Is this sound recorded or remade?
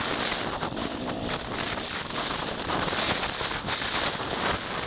recorded